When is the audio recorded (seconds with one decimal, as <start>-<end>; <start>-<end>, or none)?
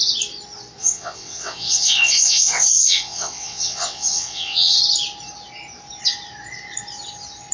0.0-0.8; 4.8-7.5